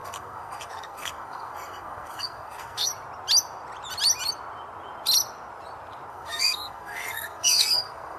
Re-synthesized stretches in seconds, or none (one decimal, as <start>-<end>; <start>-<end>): 0.0-2.9; 6.1-8.2